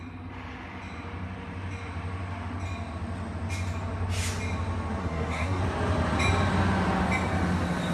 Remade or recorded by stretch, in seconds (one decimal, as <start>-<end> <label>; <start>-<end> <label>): 0.0-5.0 recorded; 5.0-5.6 remade; 5.6-7.9 recorded